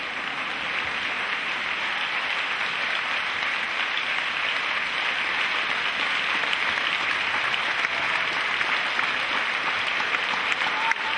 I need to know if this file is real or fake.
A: real